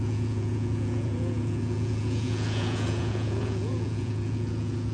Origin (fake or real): fake